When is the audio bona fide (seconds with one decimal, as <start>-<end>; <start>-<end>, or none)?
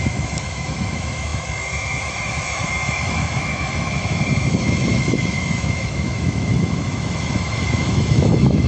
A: none